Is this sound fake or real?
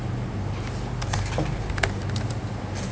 real